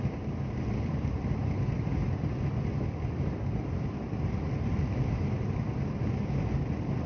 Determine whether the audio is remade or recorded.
recorded